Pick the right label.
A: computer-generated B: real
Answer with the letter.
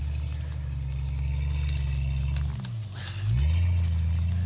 B